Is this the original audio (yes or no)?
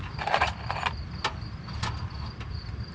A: yes